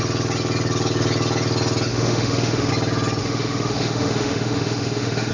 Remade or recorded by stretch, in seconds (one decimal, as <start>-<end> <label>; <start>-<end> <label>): 0.0-1.9 recorded; 1.9-2.7 remade; 2.7-3.2 recorded; 3.2-5.3 remade